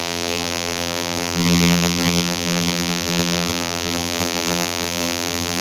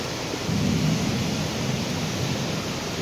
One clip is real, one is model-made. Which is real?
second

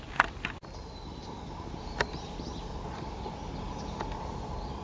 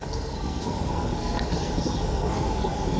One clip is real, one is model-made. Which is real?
first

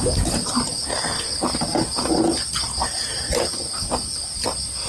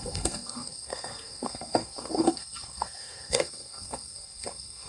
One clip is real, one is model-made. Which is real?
first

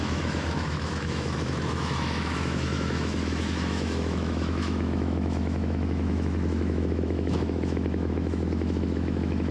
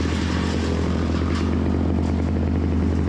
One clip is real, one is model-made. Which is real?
second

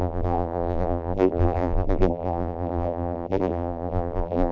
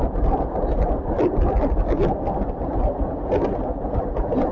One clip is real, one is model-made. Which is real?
second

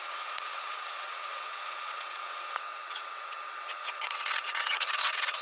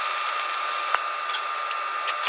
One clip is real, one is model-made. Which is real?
second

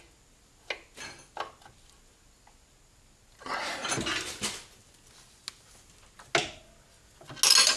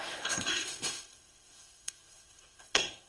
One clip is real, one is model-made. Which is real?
first